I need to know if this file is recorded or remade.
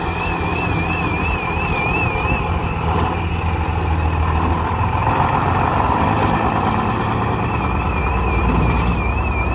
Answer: recorded